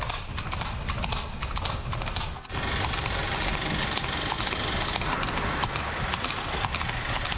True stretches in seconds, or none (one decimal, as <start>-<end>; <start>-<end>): 0.0-7.4